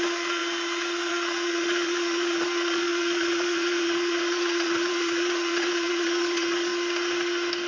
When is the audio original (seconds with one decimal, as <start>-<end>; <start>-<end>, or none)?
0.4-1.1; 6.7-7.7